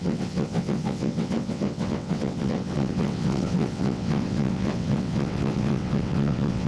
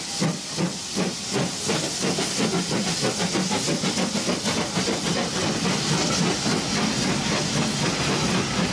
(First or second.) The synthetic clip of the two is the first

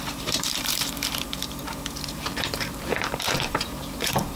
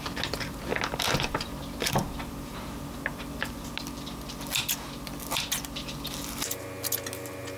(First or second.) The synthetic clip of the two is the first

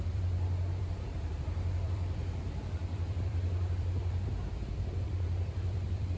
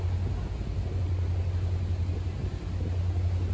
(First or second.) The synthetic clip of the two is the first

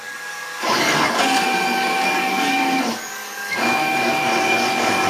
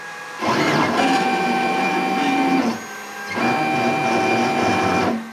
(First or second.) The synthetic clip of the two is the first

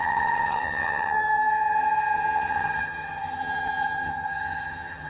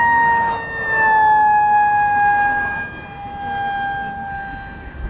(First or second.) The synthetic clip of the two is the first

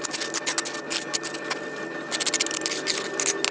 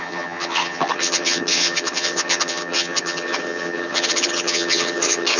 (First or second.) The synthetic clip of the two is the second